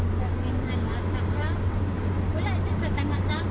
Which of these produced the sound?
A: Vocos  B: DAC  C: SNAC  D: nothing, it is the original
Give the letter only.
D